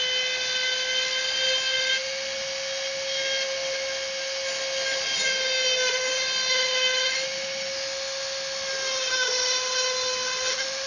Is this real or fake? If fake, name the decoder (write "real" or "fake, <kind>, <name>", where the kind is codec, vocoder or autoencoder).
real